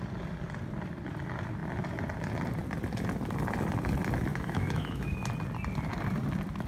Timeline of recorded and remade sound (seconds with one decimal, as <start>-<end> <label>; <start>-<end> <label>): 0.0-4.3 recorded; 4.3-5.3 remade; 5.3-6.7 recorded